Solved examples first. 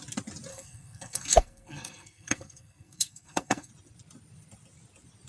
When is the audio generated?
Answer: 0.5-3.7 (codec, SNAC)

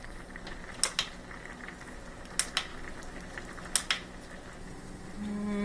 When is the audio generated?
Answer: none

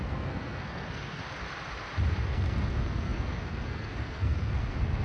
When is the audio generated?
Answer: 0.0-1.2 (codec, SNAC); 2.2-5.0

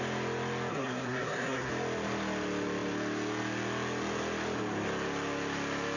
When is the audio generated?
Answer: 0.7-1.7 (codec, SNAC)

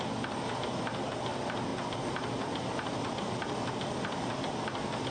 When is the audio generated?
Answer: none

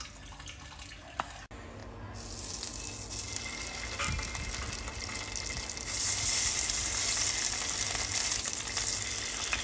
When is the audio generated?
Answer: none